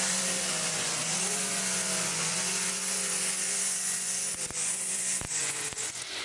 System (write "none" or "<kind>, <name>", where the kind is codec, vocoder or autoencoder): vocoder, Vocos